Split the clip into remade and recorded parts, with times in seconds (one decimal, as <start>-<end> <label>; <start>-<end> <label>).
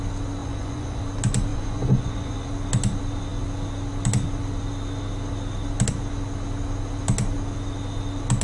0.0-0.4 recorded; 0.4-1.0 remade; 1.0-1.5 recorded; 1.5-2.5 remade; 2.5-8.4 recorded